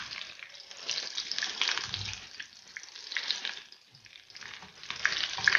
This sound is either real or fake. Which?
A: real